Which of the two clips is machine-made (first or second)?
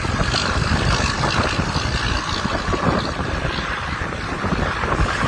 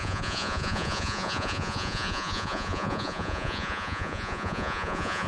second